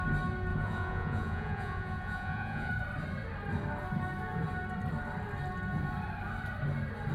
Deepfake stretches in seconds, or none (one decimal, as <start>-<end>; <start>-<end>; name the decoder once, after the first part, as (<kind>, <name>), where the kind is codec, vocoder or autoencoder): 0.5-2.7 (vocoder, Vocos)

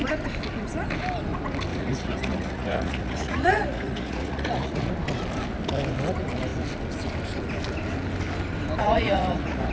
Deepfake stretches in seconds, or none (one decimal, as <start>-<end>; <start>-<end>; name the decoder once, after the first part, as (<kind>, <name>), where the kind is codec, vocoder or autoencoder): 1.7-4.9 (vocoder, Vocos); 8.8-9.7

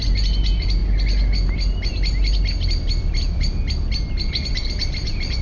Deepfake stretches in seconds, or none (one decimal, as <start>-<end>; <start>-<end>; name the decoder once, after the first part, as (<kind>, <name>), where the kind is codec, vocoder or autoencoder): none

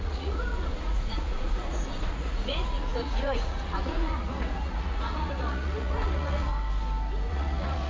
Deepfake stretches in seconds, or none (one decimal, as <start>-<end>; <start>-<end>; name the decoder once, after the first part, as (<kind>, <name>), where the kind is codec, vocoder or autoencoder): 0.0-6.5 (vocoder, Vocos); 7.3-7.9

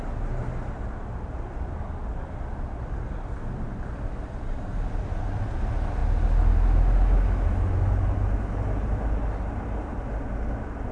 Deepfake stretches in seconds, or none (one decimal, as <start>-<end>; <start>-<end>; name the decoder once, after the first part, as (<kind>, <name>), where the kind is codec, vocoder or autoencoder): none

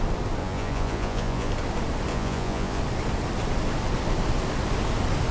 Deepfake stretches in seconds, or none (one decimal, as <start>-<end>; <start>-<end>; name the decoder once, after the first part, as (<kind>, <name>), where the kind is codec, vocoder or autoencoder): 0.4-1.5 (vocoder, Vocos); 2.1-2.8